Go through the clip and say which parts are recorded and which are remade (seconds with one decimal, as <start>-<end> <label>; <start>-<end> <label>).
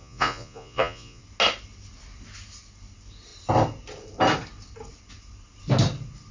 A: 0.0-1.2 remade; 1.2-6.3 recorded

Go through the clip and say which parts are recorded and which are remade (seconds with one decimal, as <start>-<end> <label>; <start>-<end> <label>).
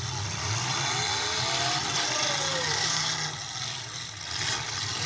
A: 0.0-2.5 recorded; 2.5-3.1 remade; 3.1-5.1 recorded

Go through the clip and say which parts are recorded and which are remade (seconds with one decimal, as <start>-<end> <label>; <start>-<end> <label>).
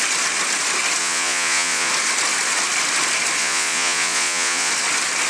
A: 0.0-1.0 recorded; 1.0-1.9 remade; 1.9-3.4 recorded; 3.4-4.7 remade; 4.7-5.3 recorded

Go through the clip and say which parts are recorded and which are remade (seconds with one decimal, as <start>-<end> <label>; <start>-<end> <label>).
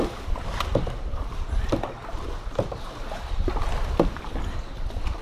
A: 0.0-0.7 recorded; 0.7-1.5 remade; 1.5-5.2 recorded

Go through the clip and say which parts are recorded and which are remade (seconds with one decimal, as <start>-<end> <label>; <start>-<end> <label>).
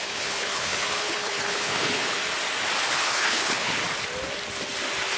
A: 0.0-2.2 remade; 2.2-2.9 recorded; 2.9-3.8 remade; 3.8-5.2 recorded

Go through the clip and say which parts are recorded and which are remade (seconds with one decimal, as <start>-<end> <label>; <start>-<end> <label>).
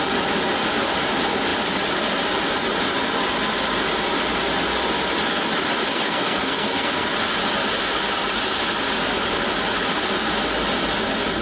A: 0.0-5.9 recorded; 5.9-7.1 remade; 7.1-11.4 recorded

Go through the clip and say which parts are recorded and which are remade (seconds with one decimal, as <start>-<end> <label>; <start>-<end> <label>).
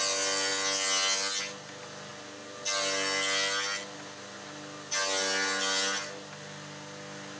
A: 0.0-7.4 recorded